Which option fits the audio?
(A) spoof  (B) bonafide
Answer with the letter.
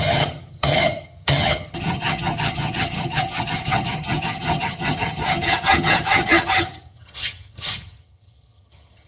A